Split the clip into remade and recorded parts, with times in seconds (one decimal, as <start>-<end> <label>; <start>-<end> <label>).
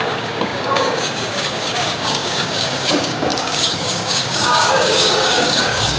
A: 0.0-6.0 remade